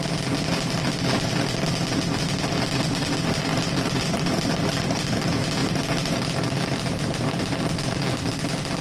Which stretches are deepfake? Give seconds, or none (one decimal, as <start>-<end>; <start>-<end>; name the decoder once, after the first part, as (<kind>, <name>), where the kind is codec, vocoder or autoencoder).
3.5-4.6 (vocoder, BigVGAN v2); 5.6-7.6